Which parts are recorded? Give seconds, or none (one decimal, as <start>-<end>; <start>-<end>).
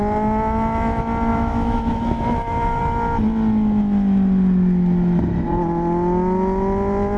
0.0-1.3; 2.8-7.2